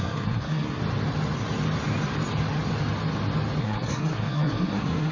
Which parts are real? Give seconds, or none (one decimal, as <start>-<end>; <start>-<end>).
0.8-3.6